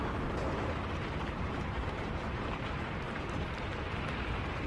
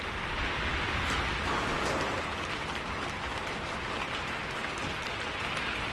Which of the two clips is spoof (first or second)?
first